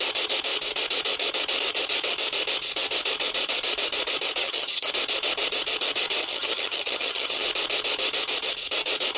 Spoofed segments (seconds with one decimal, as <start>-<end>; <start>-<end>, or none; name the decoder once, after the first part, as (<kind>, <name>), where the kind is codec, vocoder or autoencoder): 4.4-4.9 (vocoder, HiFi-GAN); 6.2-7.4